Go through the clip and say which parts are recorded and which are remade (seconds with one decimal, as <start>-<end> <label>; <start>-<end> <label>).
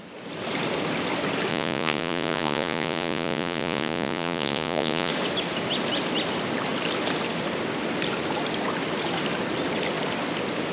0.0-1.5 recorded; 1.5-5.1 remade; 5.1-10.7 recorded